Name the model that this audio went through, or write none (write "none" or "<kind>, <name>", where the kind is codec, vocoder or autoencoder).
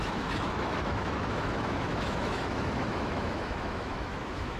autoencoder, DAC-VAE